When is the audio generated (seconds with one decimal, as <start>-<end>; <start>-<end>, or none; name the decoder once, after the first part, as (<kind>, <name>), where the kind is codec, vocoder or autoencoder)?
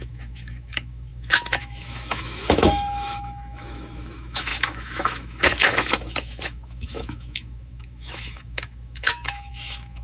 0.0-10.0 (autoencoder, DAC-VAE)